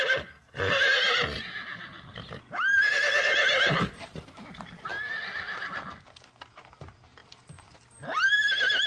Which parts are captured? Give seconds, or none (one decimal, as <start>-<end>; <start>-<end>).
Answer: 0.4-3.2; 4.9-6.5